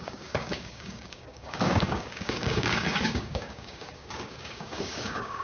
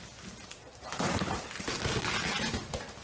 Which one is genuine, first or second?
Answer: second